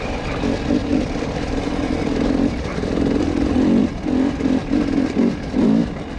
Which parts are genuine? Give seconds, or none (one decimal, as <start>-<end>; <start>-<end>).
0.0-0.9; 4.6-6.2